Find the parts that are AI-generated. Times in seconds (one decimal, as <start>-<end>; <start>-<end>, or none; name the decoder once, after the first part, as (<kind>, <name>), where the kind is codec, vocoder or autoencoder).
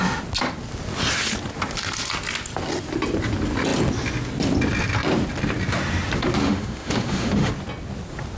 6.4-7.5 (autoencoder, DAC-VAE)